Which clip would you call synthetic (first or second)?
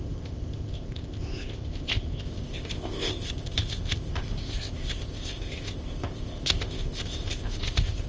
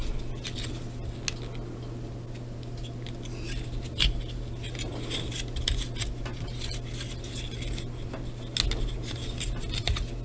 first